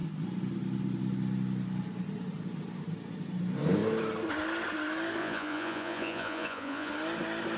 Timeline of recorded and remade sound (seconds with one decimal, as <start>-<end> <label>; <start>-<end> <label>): 0.0-5.2 recorded; 5.2-6.9 remade; 6.9-7.6 recorded

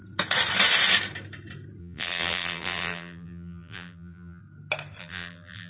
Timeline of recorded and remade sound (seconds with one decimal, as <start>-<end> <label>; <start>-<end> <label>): 0.0-1.8 recorded; 1.8-4.4 remade; 4.4-5.0 recorded; 5.0-5.7 remade

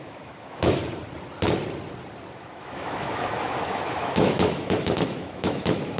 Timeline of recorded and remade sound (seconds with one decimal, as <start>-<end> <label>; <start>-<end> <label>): 0.0-0.8 remade; 0.8-2.3 recorded; 2.3-6.0 remade

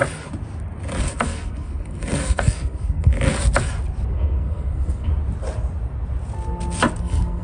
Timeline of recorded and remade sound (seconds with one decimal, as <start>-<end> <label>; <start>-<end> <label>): 0.0-1.0 recorded; 1.0-3.1 remade; 3.1-4.1 recorded; 4.1-5.1 remade; 5.1-7.0 recorded; 7.0-7.4 remade

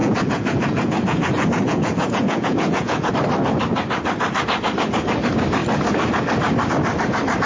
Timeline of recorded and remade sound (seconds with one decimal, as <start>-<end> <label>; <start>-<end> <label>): 0.0-3.1 remade; 3.1-7.5 recorded

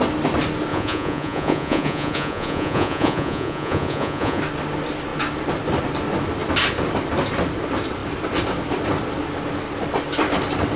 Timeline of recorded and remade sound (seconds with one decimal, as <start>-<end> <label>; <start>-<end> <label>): 0.0-0.7 recorded; 0.7-4.4 remade; 4.4-10.8 recorded

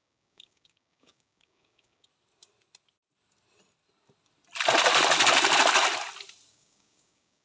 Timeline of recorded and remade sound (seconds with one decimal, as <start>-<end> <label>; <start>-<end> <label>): 0.0-2.1 remade; 2.1-6.5 recorded; 6.5-7.4 remade

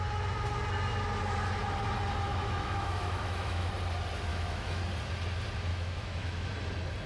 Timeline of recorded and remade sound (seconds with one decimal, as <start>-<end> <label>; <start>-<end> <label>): 0.0-2.3 recorded; 2.3-3.7 remade; 3.7-4.3 recorded; 4.3-4.8 remade; 4.8-5.7 recorded; 5.7-6.5 remade; 6.5-7.1 recorded